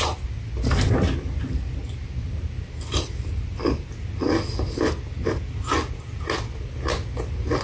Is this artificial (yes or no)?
no